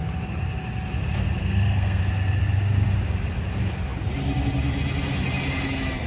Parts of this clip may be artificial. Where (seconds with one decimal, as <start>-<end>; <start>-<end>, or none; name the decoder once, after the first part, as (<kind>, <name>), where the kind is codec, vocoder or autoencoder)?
1.4-2.0 (codec, SNAC)

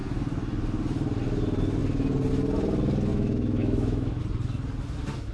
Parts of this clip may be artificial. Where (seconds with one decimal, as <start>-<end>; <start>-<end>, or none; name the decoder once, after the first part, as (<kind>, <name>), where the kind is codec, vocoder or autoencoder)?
3.1-4.2 (autoencoder, DAC-VAE)

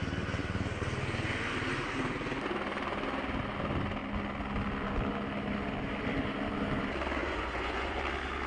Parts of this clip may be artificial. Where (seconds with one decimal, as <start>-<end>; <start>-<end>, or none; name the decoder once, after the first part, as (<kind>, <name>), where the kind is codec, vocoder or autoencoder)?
7.2-8.0 (vocoder, Vocos)

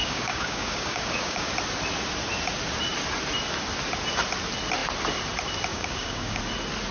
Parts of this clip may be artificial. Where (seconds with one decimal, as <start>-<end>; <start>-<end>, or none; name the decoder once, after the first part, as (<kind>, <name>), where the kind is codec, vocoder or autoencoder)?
0.0-1.5 (codec, DAC); 5.7-6.4

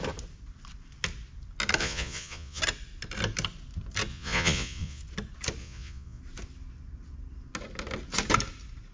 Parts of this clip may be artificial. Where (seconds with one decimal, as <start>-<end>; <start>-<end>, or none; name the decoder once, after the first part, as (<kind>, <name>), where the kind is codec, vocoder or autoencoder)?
1.8-2.6 (vocoder, Vocos); 4.1-5.0; 5.6-6.2

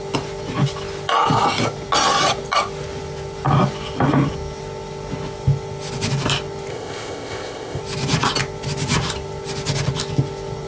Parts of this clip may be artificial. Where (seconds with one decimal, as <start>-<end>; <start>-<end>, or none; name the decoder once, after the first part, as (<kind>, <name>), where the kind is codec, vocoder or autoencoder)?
6.7-7.8 (codec, ZipCodec)

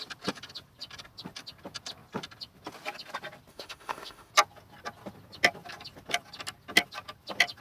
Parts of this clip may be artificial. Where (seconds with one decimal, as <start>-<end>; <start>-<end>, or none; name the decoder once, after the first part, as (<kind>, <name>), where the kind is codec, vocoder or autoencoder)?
3.5-4.3 (autoencoder, DAC-VAE)

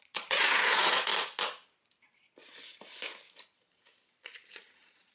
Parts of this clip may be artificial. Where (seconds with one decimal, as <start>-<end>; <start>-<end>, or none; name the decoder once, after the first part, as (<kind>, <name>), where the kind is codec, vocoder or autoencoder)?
0.0-1.1 (vocoder, Vocos); 4.2-5.1